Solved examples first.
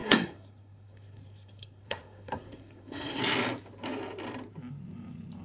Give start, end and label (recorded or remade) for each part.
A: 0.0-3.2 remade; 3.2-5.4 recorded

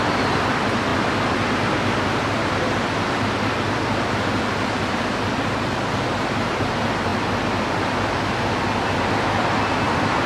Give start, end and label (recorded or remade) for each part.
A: 0.0-0.9 recorded; 0.9-4.9 remade; 4.9-10.3 recorded

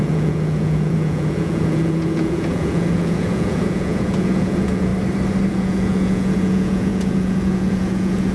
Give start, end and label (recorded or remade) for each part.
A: 0.0-4.9 remade; 4.9-5.5 recorded; 5.5-8.3 remade

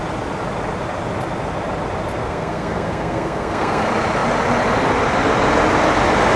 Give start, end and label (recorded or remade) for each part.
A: 0.0-2.2 recorded; 2.2-3.8 remade; 3.8-6.4 recorded

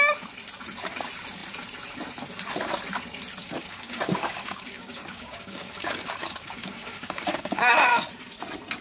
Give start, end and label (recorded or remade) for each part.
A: 0.0-3.4 recorded; 3.4-8.0 remade; 8.0-8.8 recorded

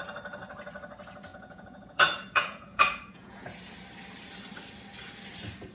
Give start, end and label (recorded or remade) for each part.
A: 0.0-1.3 recorded; 1.3-3.6 remade; 3.6-5.7 recorded

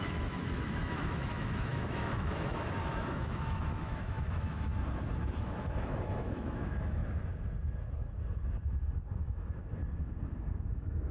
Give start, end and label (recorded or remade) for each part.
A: 0.0-4.7 remade; 4.7-5.4 recorded; 5.4-7.0 remade; 7.0-9.2 recorded; 9.2-9.6 remade; 9.6-10.7 recorded; 10.7-11.1 remade

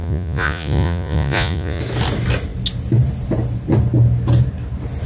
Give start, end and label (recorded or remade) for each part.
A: 0.0-1.8 remade; 1.8-5.1 recorded